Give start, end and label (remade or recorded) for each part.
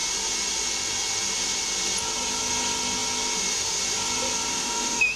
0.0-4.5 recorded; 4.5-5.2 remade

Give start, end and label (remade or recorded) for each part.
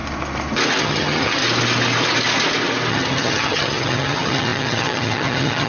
0.0-0.8 recorded; 0.8-1.4 remade; 1.4-2.9 recorded; 2.9-5.7 remade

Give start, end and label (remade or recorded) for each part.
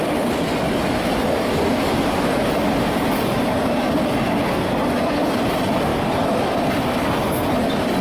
0.0-8.0 recorded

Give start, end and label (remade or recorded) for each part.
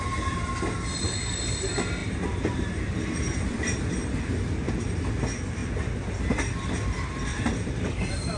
0.0-2.0 recorded; 2.0-4.7 remade; 4.7-5.6 recorded; 5.6-6.2 remade; 6.2-7.3 recorded; 7.3-8.4 remade